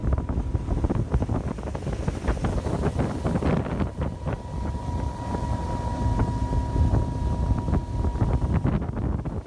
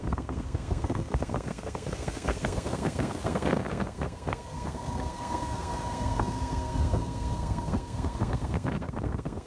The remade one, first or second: second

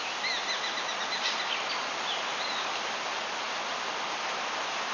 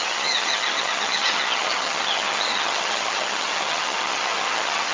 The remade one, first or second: second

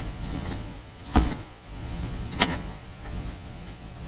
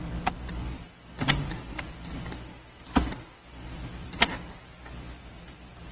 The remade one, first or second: first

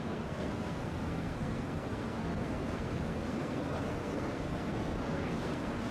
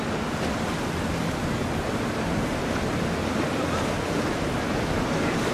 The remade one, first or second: first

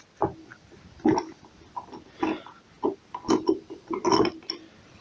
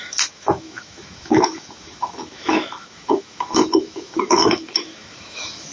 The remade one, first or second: second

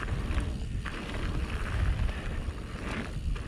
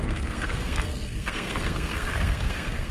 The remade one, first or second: second